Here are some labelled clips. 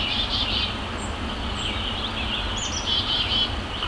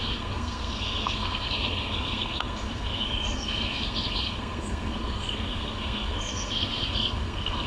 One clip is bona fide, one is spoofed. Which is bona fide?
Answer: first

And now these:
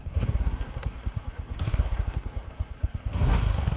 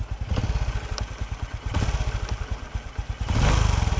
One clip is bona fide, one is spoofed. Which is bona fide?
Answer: second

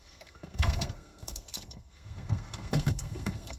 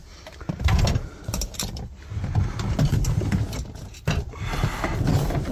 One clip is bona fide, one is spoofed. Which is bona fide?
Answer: second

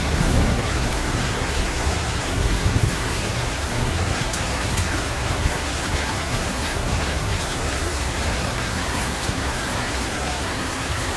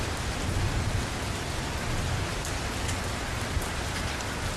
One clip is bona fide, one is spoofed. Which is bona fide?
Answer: second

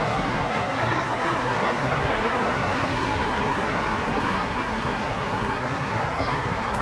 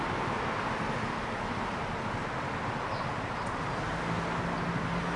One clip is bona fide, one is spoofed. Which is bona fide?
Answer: second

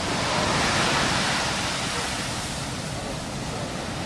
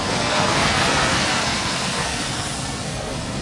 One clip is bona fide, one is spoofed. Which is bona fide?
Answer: first